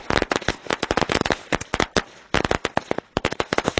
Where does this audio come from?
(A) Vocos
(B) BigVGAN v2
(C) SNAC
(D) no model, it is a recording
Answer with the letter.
D